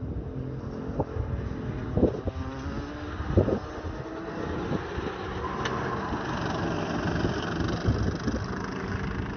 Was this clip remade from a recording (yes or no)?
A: no